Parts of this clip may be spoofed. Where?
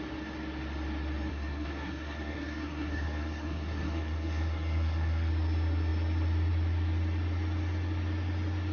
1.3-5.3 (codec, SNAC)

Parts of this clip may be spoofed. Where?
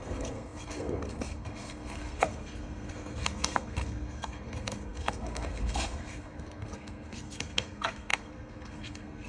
0.0-9.3 (codec, SNAC)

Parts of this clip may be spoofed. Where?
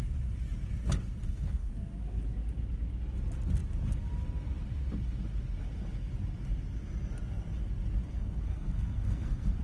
1.2-1.7 (codec, SNAC); 8.1-9.6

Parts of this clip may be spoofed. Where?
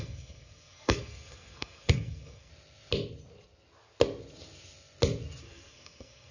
0.0-2.5 (codec, SNAC); 5.4-6.3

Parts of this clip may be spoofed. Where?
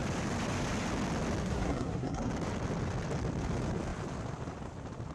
1.4-2.3 (codec, SNAC)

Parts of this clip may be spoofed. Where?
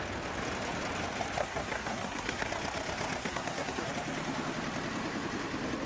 1.4-2.5 (codec, SNAC); 3.2-3.9